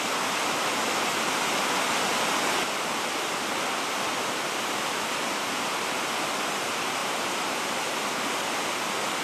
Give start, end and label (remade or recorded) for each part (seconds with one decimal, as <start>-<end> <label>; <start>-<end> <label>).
0.0-7.0 recorded; 7.0-7.6 remade; 7.6-9.2 recorded